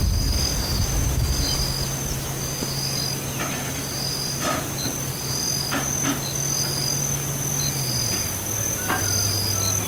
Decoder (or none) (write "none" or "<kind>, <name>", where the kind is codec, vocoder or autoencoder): none